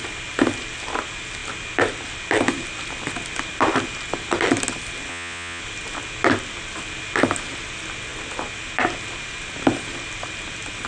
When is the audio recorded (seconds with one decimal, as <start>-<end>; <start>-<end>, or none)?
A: 0.0-5.1; 5.6-10.9